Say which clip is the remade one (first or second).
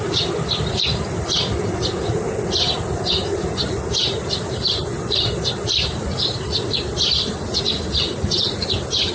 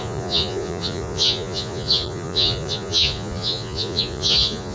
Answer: second